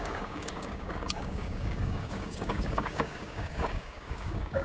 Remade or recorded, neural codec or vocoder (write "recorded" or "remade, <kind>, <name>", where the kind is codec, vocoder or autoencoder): remade, codec, DAC